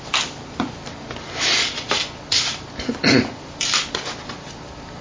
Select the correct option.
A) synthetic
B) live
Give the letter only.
A